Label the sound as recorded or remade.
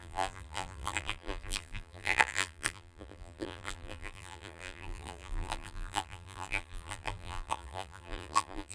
remade